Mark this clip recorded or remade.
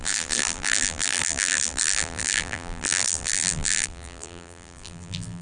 remade